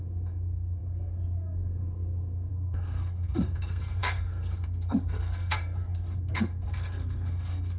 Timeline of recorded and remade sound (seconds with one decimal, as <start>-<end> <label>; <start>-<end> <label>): 0.0-7.8 remade